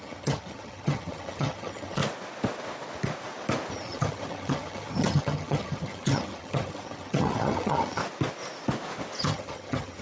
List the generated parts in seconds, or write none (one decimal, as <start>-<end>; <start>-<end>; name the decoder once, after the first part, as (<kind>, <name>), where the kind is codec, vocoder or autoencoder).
0.0-2.0 (vocoder, HiFi-GAN); 3.7-8.0; 9.2-10.0